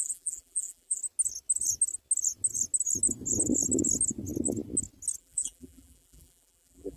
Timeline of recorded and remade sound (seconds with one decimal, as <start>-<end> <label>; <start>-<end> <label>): 0.0-1.0 remade; 1.0-5.2 recorded; 5.2-7.0 remade